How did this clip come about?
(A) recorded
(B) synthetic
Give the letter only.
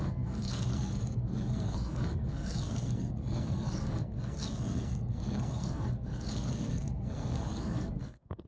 B